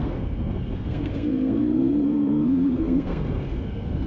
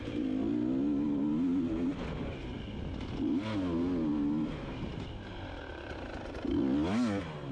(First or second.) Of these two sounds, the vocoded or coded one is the first